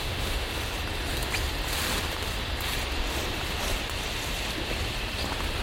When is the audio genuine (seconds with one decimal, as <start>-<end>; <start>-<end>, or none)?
0.5-5.6